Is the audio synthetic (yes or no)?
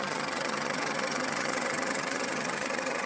yes